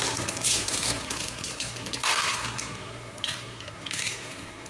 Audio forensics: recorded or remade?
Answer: remade